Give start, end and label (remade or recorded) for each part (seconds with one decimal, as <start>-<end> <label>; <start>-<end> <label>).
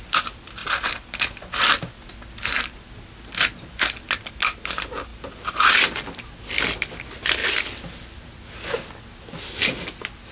0.0-10.3 recorded